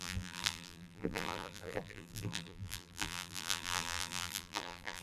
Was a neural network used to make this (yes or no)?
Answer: yes